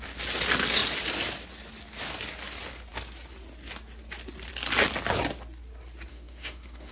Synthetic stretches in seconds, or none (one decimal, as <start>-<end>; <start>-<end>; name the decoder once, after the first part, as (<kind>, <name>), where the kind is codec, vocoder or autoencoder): 6.1-6.9 (autoencoder, DAC-VAE)